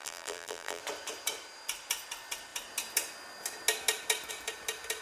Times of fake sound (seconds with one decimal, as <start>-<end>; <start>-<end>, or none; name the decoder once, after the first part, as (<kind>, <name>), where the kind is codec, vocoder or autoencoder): 0.0-0.8 (vocoder, BigVGAN v2)